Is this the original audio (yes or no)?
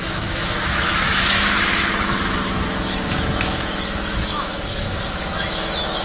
no